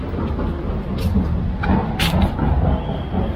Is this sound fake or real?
real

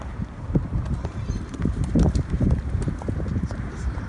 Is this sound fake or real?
fake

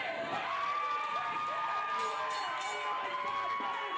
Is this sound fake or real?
real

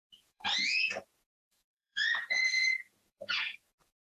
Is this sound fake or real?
fake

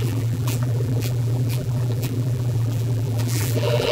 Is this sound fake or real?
fake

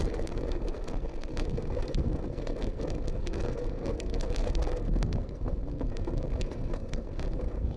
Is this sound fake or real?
fake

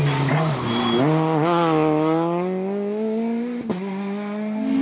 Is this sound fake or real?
real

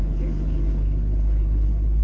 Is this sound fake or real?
fake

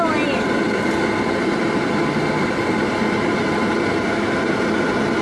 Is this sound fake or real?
real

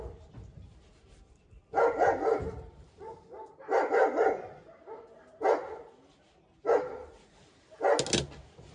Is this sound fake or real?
real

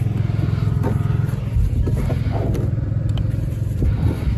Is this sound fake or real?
real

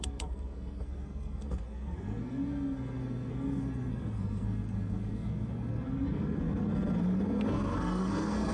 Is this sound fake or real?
fake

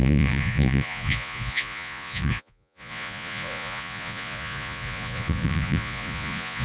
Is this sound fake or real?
fake